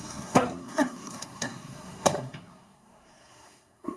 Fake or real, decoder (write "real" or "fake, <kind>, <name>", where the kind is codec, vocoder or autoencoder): fake, codec, SNAC